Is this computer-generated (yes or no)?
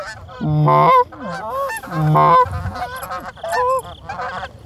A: no